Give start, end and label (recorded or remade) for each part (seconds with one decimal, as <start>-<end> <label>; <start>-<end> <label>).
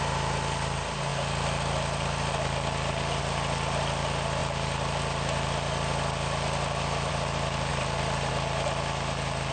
0.0-7.7 recorded; 7.7-8.3 remade; 8.3-9.5 recorded